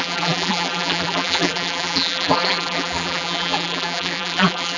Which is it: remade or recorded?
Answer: remade